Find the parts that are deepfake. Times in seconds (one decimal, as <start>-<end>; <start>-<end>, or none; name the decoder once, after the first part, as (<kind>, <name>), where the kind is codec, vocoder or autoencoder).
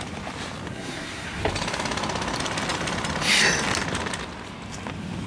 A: 0.7-1.4 (codec, SNAC)